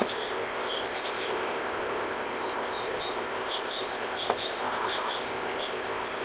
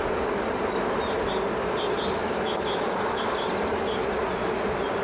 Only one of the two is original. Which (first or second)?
second